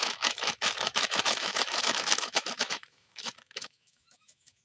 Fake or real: fake